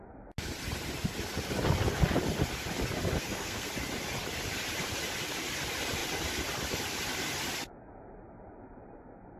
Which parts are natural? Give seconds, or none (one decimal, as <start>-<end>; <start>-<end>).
0.0-3.2; 3.7-9.4